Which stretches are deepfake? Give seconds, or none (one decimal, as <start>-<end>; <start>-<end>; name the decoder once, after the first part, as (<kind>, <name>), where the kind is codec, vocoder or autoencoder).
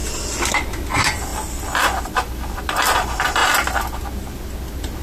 0.7-1.3 (vocoder, BigVGAN v2); 2.0-3.4